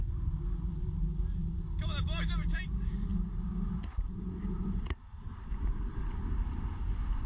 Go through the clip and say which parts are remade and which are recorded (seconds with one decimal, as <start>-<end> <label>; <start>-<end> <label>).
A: 0.0-7.3 recorded

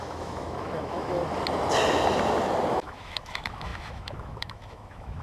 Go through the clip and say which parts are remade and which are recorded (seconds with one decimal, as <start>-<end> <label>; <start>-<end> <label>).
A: 0.0-1.2 remade; 1.2-2.7 recorded; 2.7-5.2 remade

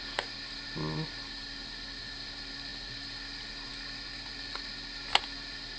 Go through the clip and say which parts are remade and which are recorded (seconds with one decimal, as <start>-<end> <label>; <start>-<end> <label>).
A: 0.0-5.8 recorded